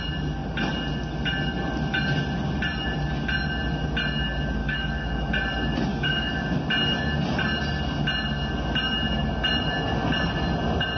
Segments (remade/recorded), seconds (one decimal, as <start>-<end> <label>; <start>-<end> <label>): 0.0-4.6 recorded; 4.6-5.3 remade; 5.3-5.9 recorded; 5.9-6.6 remade; 6.6-11.0 recorded